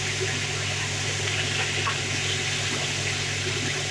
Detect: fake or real real